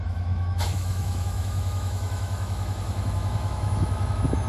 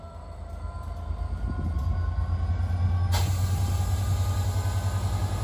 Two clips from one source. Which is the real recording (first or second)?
second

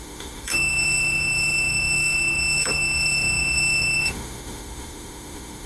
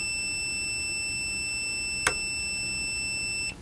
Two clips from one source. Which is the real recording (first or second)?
second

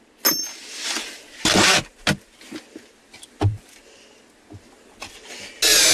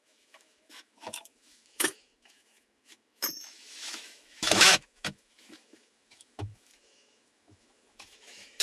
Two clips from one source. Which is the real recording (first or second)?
first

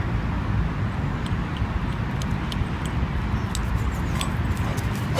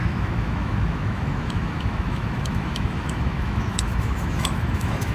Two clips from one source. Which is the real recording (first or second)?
first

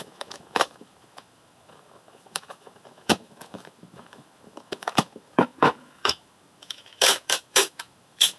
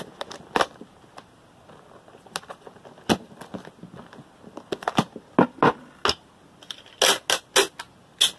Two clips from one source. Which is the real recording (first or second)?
second